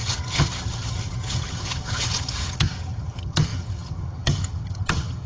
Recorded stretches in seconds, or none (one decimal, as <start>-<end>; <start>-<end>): none